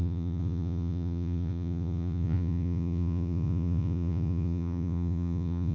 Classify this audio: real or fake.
fake